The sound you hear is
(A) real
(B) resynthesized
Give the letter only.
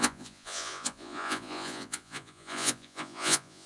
B